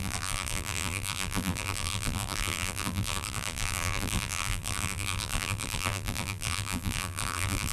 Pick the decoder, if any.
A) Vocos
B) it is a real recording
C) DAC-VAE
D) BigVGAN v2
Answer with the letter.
D